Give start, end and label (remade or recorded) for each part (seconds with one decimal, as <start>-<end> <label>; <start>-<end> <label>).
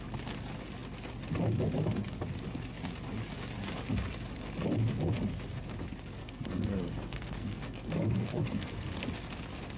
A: 0.0-6.2 recorded; 6.2-8.9 remade; 8.9-9.8 recorded